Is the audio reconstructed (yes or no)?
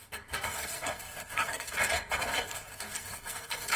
yes